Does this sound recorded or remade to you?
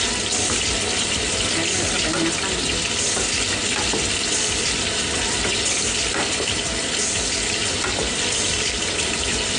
recorded